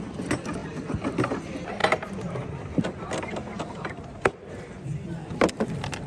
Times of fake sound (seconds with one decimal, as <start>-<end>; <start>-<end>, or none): none